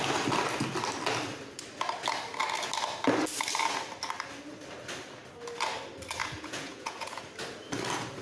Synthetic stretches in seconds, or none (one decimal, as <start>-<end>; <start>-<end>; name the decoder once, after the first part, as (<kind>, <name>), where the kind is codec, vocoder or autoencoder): 6.2-7.2 (vocoder, Vocos)